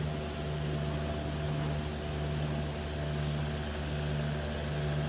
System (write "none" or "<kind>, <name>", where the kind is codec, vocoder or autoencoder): none